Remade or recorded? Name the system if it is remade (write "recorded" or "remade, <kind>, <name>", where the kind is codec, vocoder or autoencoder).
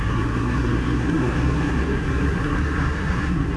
remade, codec, SNAC